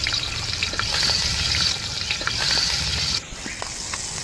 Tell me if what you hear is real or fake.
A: real